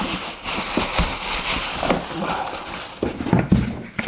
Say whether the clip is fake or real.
real